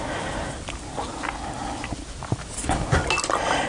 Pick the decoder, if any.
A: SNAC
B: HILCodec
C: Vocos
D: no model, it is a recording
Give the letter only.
D